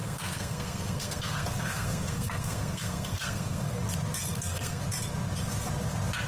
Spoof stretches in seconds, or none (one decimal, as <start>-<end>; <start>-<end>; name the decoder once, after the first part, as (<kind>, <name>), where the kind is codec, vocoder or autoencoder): 0.0-3.8 (codec, SNAC); 4.3-4.8